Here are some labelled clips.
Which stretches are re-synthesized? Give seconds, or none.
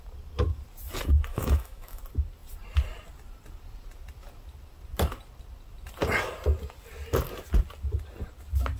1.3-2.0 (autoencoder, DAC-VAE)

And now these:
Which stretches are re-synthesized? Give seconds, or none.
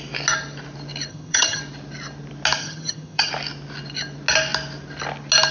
1.1-1.6 (vocoder, HiFi-GAN); 2.6-3.3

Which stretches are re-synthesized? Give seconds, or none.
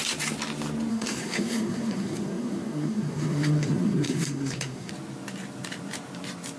0.9-4.9 (codec, SNAC)